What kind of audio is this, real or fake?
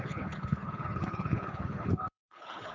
fake